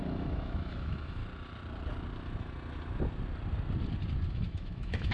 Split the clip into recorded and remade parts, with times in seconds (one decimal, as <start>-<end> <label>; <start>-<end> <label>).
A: 0.0-1.2 remade; 1.2-4.3 recorded; 4.3-5.1 remade